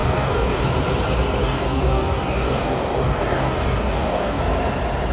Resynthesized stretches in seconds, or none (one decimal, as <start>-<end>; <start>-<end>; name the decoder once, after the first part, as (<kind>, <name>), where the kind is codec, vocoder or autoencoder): 0.0-0.6 (codec, DAC); 1.4-4.4